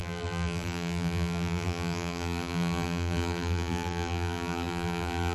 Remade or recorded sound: remade